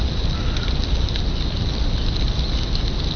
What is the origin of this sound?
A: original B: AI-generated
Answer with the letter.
A